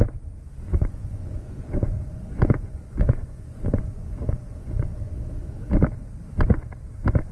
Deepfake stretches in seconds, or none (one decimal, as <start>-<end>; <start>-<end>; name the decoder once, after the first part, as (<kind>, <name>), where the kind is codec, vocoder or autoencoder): 0.7-5.1 (vocoder, Vocos)